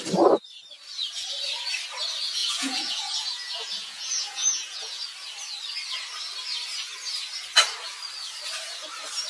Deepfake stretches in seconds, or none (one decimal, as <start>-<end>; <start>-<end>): 2.4-5.0